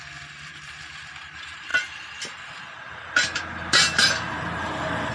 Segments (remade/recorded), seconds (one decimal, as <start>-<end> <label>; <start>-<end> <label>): 0.0-1.7 remade; 1.7-3.1 recorded; 3.1-5.1 remade